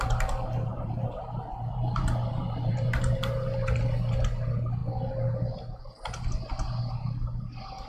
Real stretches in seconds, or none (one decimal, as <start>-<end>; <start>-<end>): 0.0-0.7; 3.8-7.9